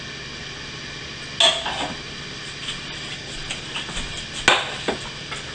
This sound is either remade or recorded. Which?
recorded